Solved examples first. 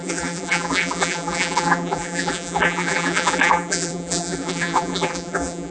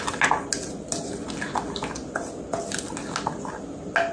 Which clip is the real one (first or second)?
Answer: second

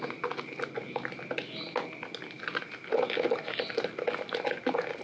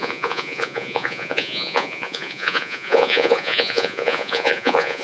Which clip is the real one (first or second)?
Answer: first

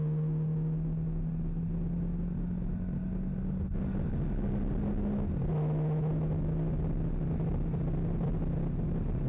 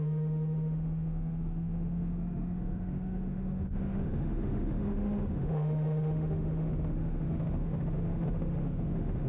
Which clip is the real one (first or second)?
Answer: first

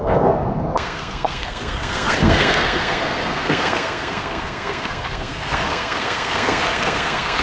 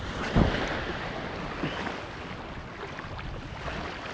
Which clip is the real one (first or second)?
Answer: second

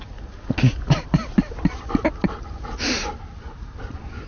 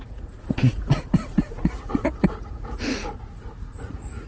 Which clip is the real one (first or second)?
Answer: first